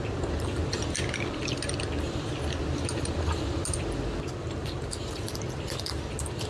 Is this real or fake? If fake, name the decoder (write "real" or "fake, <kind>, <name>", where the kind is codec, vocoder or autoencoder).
real